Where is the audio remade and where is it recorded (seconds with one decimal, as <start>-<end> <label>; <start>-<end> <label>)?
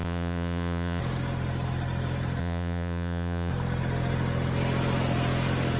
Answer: 0.0-1.0 remade; 1.0-2.4 recorded; 2.4-3.5 remade; 3.5-5.8 recorded